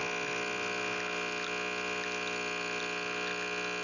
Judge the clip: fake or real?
real